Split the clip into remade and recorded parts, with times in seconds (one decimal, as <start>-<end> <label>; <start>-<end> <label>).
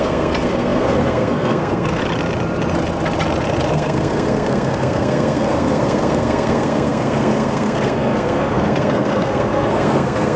0.0-2.0 remade; 2.0-3.7 recorded; 3.7-10.4 remade